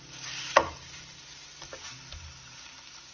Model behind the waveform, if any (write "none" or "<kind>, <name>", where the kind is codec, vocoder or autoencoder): none